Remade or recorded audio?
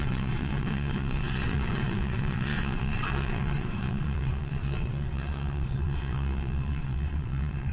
remade